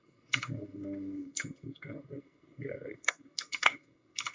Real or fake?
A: fake